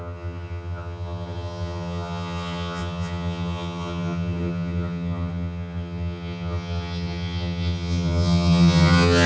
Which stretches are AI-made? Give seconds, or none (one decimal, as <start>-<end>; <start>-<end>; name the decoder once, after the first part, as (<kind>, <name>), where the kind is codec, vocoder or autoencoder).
0.0-9.3 (vocoder, HiFi-GAN)